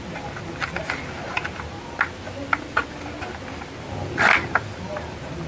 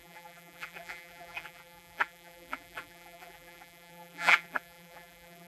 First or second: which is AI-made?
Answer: second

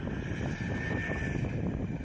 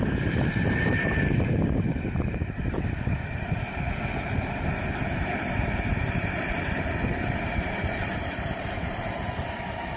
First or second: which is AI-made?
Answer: second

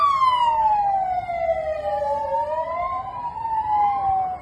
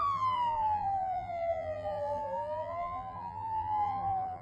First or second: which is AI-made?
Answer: second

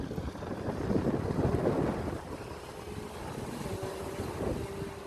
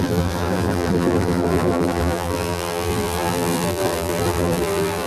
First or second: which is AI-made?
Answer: second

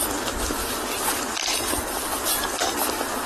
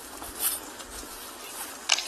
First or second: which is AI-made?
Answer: first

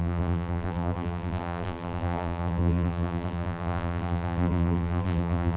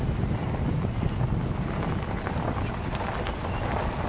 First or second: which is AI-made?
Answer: first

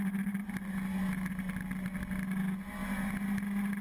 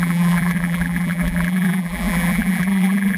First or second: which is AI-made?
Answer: second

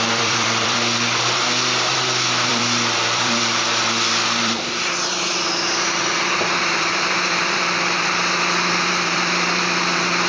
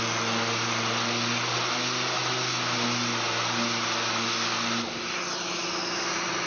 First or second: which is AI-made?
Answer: first